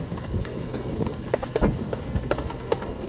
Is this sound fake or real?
fake